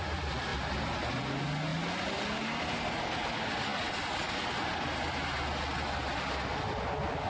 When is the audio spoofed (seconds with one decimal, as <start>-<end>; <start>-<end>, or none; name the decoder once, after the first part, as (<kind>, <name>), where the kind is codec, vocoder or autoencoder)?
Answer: 0.5-1.1 (vocoder, BigVGAN v2)